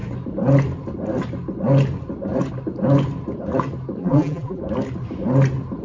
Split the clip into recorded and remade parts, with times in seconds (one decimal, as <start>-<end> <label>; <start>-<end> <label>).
0.0-4.0 recorded; 4.0-4.6 remade; 4.6-5.8 recorded

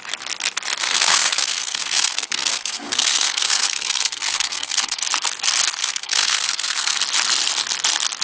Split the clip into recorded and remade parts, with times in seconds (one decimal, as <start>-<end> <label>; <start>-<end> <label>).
0.0-0.8 recorded; 0.8-5.0 remade; 5.0-5.8 recorded; 5.8-7.0 remade; 7.0-8.2 recorded

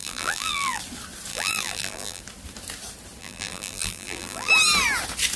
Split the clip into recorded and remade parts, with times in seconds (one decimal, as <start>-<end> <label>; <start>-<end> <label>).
0.0-0.8 remade; 0.8-1.3 recorded; 1.3-2.2 remade; 2.2-3.2 recorded; 3.2-4.5 remade; 4.5-5.4 recorded

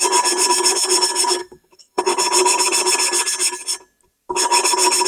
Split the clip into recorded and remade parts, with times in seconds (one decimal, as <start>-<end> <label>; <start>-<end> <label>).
0.0-1.4 recorded; 1.4-2.0 remade; 2.0-5.1 recorded

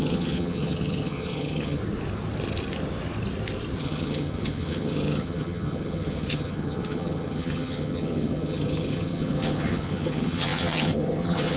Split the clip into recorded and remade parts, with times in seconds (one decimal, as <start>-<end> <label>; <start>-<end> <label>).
0.0-1.8 remade; 1.8-3.8 recorded; 3.8-11.6 remade